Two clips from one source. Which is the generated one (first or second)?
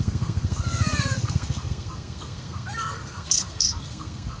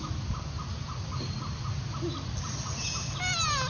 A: first